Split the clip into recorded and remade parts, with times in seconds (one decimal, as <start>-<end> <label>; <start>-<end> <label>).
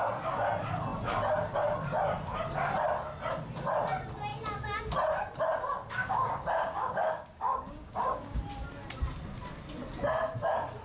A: 0.0-6.0 recorded; 6.0-8.4 remade; 8.4-10.8 recorded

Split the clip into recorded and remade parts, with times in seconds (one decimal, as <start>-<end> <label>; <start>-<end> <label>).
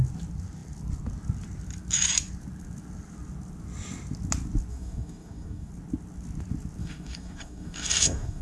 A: 0.0-4.7 recorded; 4.7-5.7 remade; 5.7-6.8 recorded; 6.8-8.4 remade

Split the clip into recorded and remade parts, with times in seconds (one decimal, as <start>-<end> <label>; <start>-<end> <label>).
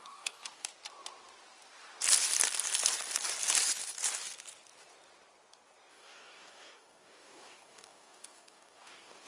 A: 0.0-0.7 remade; 0.7-5.9 recorded; 5.9-9.3 remade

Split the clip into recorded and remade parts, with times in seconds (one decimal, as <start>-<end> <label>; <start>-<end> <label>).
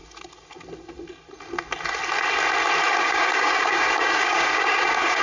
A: 0.0-2.9 recorded; 2.9-5.2 remade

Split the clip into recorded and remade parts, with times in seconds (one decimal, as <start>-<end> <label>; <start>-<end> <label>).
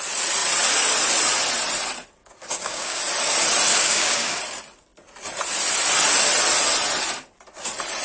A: 0.0-2.2 recorded; 2.2-3.0 remade; 3.0-3.7 recorded; 3.7-4.4 remade; 4.4-8.0 recorded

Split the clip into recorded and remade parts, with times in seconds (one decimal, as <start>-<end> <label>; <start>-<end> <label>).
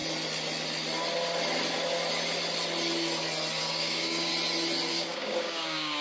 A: 0.0-3.6 recorded; 3.6-4.3 remade; 4.3-4.9 recorded; 4.9-6.0 remade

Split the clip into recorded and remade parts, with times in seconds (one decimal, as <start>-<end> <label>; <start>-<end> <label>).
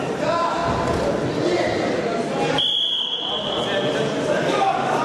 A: 0.0-4.4 recorded; 4.4-5.0 remade